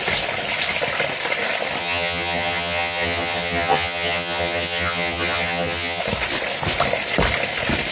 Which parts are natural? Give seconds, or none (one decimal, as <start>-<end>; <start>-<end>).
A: 0.0-1.8; 6.0-7.9